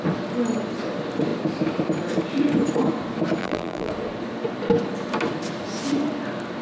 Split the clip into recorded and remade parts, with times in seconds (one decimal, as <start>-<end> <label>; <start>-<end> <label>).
0.0-3.4 recorded; 3.4-3.9 remade; 3.9-6.6 recorded

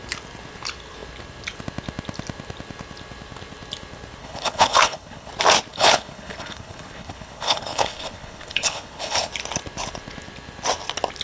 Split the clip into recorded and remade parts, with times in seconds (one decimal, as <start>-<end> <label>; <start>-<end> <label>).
0.0-4.2 recorded; 4.2-5.3 remade; 5.3-5.7 recorded; 5.7-9.3 remade; 9.3-11.2 recorded

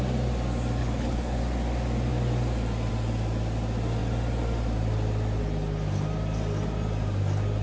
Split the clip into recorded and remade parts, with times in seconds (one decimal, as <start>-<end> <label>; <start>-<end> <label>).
0.0-0.8 recorded; 0.8-1.4 remade; 1.4-7.6 recorded

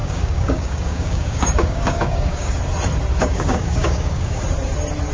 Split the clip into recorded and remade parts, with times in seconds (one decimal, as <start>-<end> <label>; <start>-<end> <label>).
0.0-2.6 remade; 2.6-3.2 recorded; 3.2-4.4 remade; 4.4-5.1 recorded

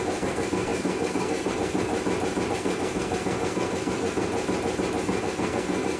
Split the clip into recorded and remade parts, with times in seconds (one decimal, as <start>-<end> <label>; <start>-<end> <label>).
0.0-1.9 remade; 1.9-2.5 recorded; 2.5-4.3 remade; 4.3-5.0 recorded; 5.0-6.0 remade

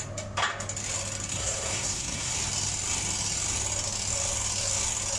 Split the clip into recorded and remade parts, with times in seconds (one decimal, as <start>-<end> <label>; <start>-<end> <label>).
0.0-1.3 recorded; 1.3-2.3 remade; 2.3-5.2 recorded

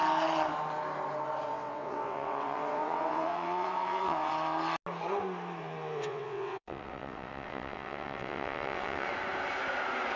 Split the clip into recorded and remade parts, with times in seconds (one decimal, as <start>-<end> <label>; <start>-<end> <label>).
0.0-1.5 recorded; 1.5-4.3 remade; 4.3-5.6 recorded; 5.6-9.1 remade; 9.1-10.2 recorded

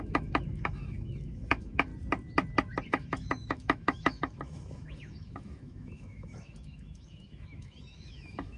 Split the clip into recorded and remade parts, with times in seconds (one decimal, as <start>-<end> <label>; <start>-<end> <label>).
0.0-1.9 remade; 1.9-2.9 recorded; 2.9-8.6 remade